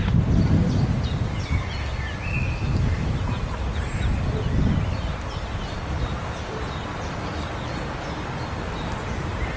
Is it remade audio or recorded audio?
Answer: recorded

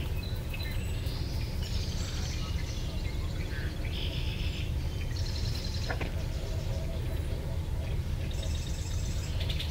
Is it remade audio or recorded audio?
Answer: recorded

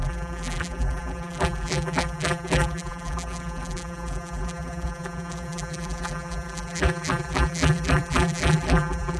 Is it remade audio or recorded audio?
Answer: remade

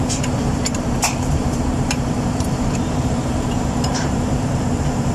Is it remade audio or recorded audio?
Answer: remade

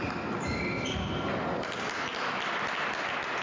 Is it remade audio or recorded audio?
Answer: recorded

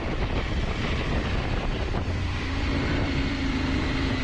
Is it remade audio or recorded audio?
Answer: remade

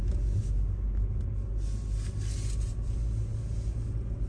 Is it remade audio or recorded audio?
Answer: recorded